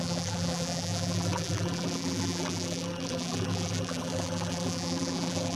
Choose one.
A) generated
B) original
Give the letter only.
A